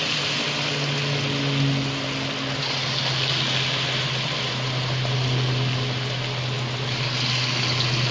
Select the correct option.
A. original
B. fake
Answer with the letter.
A